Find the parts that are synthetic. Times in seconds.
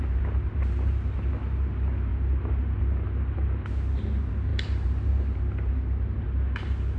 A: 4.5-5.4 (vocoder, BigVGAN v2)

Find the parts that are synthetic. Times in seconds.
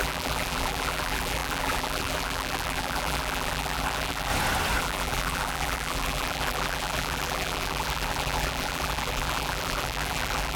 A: 0.0-4.3 (vocoder, BigVGAN v2); 4.8-10.6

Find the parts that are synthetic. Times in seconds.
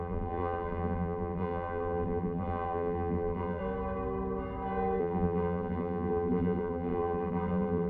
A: 0.0-3.6 (vocoder, BigVGAN v2); 5.0-7.9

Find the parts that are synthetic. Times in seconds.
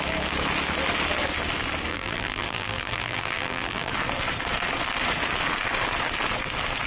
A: 1.9-3.9 (vocoder, BigVGAN v2)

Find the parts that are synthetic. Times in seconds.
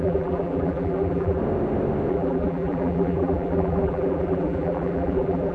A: 0.0-1.4 (vocoder, BigVGAN v2); 2.1-5.5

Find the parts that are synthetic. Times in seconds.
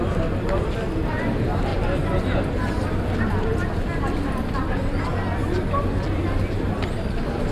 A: 0.0-1.7 (vocoder, BigVGAN v2); 3.2-5.1; 6.7-7.5